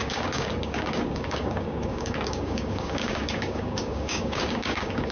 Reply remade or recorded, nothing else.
remade